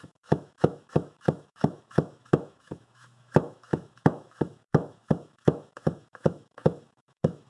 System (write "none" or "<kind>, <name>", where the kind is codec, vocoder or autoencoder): autoencoder, DAC-VAE